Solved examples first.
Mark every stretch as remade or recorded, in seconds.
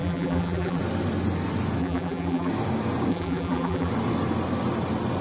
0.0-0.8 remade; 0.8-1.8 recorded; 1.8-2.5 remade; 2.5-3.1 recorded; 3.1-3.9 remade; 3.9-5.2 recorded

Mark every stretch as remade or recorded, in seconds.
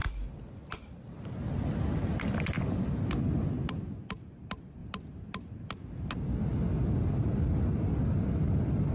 0.0-8.9 recorded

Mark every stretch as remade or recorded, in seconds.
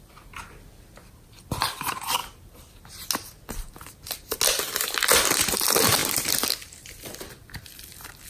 0.0-2.2 remade; 2.2-4.6 recorded; 4.6-8.3 remade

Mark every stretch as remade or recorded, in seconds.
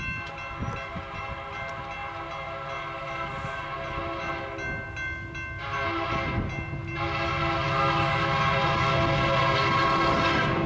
0.0-10.7 recorded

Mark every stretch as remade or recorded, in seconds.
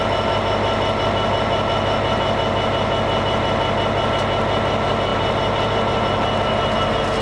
0.0-5.1 recorded; 5.1-5.7 remade; 5.7-7.2 recorded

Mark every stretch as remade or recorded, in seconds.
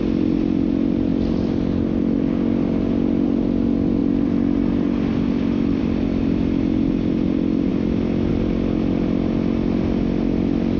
0.0-1.1 recorded; 1.1-2.2 remade; 2.2-4.0 recorded; 4.0-5.8 remade; 5.8-7.7 recorded; 7.7-8.3 remade; 8.3-10.8 recorded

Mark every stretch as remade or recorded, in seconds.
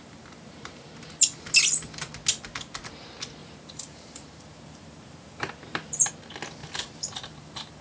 0.0-0.9 remade; 0.9-3.4 recorded; 3.4-6.1 remade; 6.1-6.6 recorded; 6.6-7.8 remade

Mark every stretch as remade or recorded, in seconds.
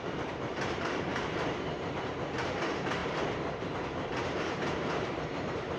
0.0-5.8 remade